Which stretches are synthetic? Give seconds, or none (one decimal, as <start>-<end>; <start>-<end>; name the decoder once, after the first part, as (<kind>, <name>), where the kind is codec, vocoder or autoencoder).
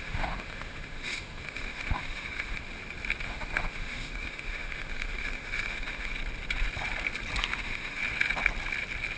0.0-2.6 (autoencoder, DAC-VAE); 3.2-6.1; 7.4-8.0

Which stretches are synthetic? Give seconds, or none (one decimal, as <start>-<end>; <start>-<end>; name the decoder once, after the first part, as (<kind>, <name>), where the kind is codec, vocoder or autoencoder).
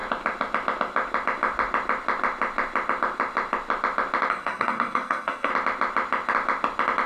4.3-5.5 (codec, SNAC)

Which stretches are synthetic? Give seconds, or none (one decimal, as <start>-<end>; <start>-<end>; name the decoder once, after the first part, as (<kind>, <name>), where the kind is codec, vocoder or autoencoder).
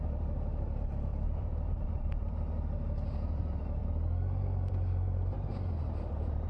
0.0-3.8 (vocoder, BigVGAN v2); 4.7-6.5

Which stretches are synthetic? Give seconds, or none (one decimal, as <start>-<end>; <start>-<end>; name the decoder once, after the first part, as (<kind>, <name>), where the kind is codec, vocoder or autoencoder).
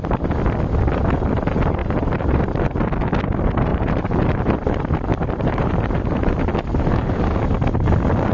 1.8-2.4 (vocoder, BigVGAN v2); 3.7-4.4; 5.1-6.4